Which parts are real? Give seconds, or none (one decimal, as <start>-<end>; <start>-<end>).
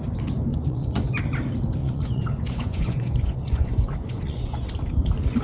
0.0-0.5; 1.2-1.8; 4.6-5.4